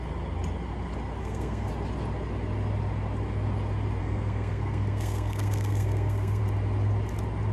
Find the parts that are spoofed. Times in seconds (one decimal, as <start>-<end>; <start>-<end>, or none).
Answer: 1.2-1.7; 4.0-6.4